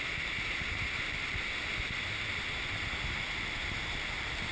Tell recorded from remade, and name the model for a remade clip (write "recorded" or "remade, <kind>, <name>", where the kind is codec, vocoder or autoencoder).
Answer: recorded